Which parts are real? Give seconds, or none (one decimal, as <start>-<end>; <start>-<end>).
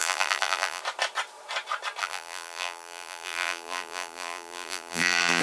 0.8-2.0